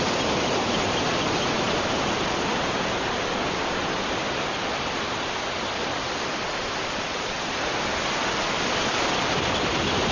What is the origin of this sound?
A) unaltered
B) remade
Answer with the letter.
A